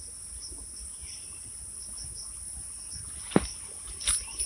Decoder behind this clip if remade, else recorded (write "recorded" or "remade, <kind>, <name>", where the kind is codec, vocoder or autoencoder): remade, vocoder, BigVGAN v2